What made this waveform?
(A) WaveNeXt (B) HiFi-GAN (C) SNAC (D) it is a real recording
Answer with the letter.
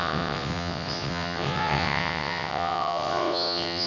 A